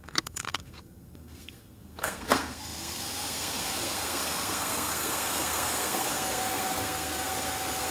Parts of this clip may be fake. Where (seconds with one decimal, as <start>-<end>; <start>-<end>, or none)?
0.0-7.9